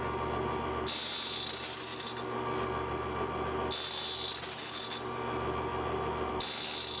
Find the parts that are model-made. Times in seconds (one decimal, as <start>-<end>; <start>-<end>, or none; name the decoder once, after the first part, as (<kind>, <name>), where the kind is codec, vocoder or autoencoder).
none